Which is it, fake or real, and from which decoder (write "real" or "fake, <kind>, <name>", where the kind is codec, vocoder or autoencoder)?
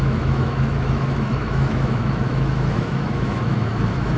fake, autoencoder, DAC-VAE